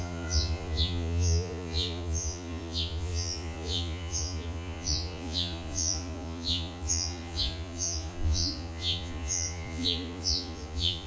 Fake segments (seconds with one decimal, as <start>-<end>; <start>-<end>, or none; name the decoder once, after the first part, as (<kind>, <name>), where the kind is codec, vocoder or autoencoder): 0.0-11.1 (vocoder, Vocos)